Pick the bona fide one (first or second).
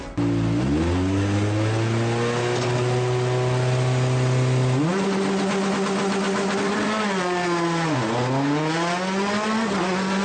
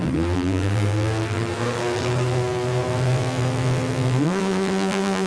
first